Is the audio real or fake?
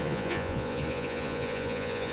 fake